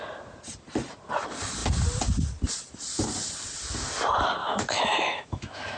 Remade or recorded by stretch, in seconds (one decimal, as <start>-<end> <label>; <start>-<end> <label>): 0.0-4.4 recorded; 4.4-5.8 remade